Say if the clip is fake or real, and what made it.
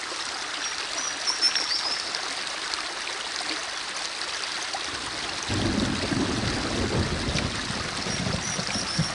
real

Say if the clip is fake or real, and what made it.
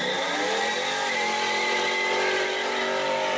real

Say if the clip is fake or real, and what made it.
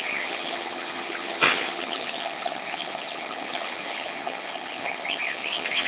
fake, vocoder, HiFi-GAN